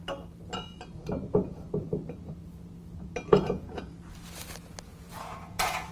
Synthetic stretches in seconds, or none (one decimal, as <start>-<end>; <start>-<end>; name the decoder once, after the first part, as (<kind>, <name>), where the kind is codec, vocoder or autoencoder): 3.3-3.9 (vocoder, Vocos); 4.9-5.9